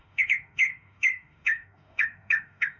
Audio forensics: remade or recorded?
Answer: remade